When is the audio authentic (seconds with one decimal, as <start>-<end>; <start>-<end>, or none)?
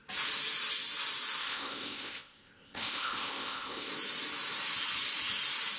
0.0-1.4; 3.9-5.8